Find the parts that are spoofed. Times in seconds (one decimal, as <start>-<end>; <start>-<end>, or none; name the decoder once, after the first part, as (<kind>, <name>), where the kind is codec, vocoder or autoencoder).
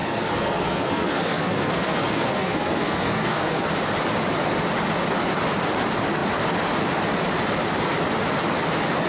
0.0-3.7 (codec, SNAC)